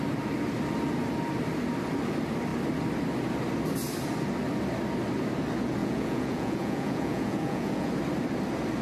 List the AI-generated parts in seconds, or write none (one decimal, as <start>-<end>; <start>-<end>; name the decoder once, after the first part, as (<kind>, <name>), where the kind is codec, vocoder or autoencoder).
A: 5.8-7.9 (vocoder, Vocos)